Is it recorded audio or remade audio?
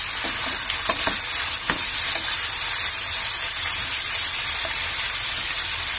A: remade